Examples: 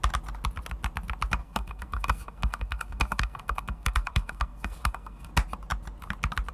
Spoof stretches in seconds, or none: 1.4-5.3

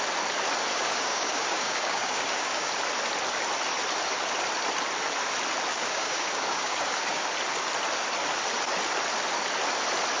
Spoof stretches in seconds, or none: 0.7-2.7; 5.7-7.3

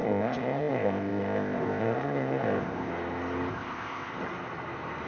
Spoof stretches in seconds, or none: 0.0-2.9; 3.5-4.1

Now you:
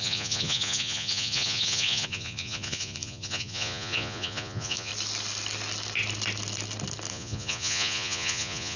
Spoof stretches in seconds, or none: 0.0-4.9; 7.1-8.8

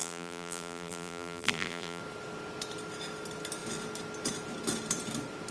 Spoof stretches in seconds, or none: 0.0-2.0